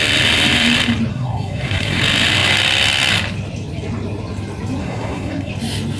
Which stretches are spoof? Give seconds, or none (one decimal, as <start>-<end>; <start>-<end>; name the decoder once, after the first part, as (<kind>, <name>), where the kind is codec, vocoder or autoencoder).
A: 1.1-2.0 (codec, SNAC); 4.8-5.5